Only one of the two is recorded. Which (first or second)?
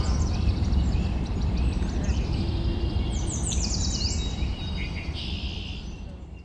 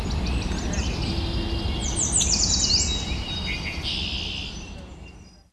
second